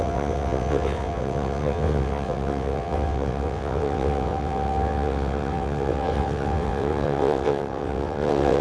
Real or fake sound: fake